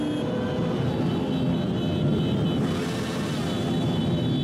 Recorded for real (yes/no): yes